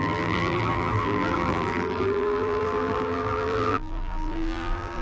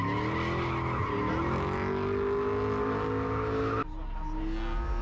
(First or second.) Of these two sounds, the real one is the second